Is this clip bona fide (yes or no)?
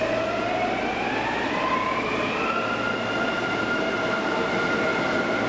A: yes